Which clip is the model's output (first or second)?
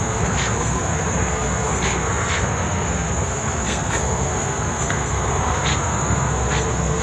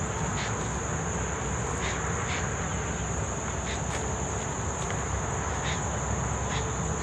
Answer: first